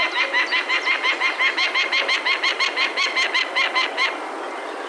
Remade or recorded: recorded